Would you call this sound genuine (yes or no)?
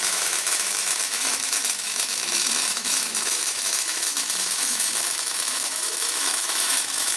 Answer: no